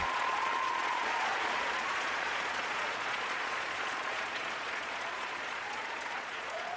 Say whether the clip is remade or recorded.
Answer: remade